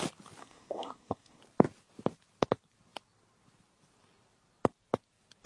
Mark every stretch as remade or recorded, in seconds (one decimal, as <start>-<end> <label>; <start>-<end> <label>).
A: 0.0-0.4 recorded; 0.4-1.4 remade; 1.4-5.5 recorded